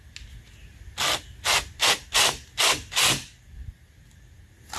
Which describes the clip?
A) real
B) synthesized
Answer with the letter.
A